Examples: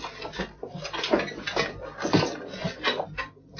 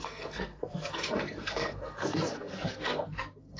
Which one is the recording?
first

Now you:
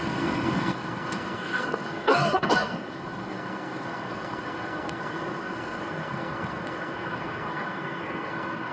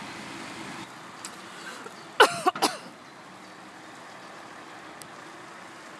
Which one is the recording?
second